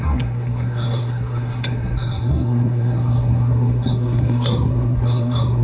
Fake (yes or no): yes